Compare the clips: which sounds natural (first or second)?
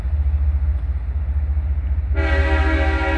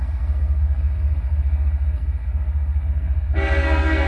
first